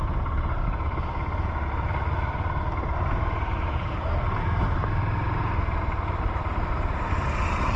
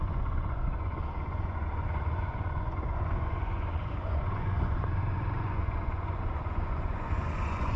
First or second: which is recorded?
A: first